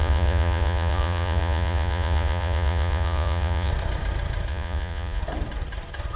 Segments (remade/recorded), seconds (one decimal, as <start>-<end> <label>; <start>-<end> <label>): 0.0-3.7 remade; 3.7-4.5 recorded; 4.5-5.2 remade; 5.2-6.2 recorded

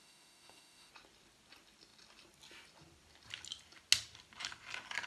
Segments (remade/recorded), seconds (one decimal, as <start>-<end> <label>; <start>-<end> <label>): 0.0-0.9 remade; 0.9-5.1 recorded

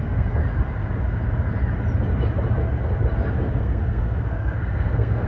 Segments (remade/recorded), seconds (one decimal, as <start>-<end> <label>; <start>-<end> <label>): 0.0-0.4 remade; 0.4-3.6 recorded; 3.6-5.3 remade

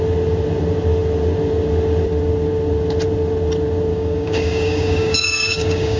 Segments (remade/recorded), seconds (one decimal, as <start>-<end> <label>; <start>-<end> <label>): 0.0-3.9 recorded; 3.9-6.0 remade

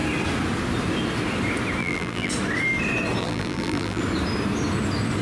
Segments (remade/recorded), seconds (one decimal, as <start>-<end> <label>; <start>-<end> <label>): 0.0-1.8 recorded; 1.8-2.3 remade; 2.3-3.2 recorded; 3.2-4.0 remade; 4.0-5.2 recorded

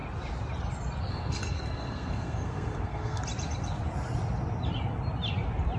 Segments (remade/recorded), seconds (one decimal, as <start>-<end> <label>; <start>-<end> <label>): 0.0-1.1 recorded; 1.1-3.2 remade; 3.2-5.8 recorded